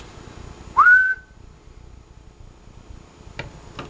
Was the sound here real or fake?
real